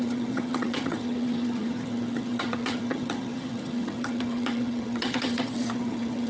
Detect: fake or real fake